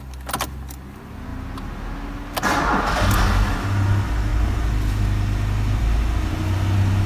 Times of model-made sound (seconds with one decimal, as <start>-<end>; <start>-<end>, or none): none